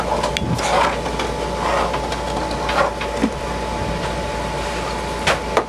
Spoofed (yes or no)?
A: no